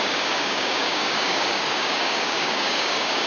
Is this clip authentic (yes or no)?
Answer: no